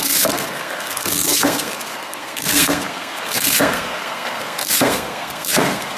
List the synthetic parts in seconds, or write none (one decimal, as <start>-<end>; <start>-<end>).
0.0-6.0